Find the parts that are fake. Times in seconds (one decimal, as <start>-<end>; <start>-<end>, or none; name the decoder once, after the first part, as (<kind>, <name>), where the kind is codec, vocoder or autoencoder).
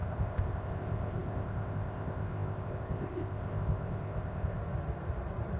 0.0-4.6 (codec, ZipCodec)